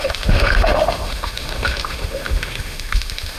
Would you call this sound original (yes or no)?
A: no